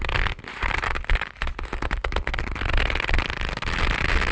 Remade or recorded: recorded